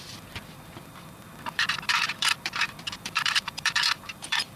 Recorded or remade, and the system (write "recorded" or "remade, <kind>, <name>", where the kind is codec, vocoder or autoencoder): remade, vocoder, BigVGAN v2